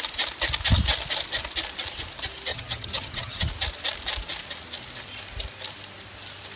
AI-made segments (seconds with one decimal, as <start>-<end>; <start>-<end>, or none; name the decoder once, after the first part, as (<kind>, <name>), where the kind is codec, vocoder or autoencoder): 2.5-3.5 (vocoder, HiFi-GAN)